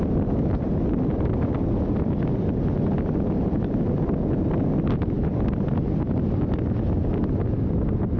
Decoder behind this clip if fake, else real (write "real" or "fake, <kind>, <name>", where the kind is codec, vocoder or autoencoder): real